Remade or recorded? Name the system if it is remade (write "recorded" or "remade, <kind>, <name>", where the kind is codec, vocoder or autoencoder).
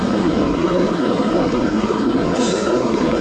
remade, codec, SNAC